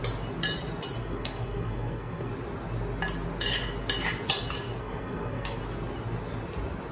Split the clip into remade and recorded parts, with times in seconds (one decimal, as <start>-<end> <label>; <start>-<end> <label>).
0.0-1.0 recorded; 1.0-2.3 remade; 2.3-4.8 recorded; 4.8-5.6 remade; 5.6-6.9 recorded